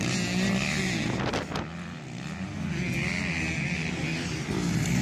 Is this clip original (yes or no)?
yes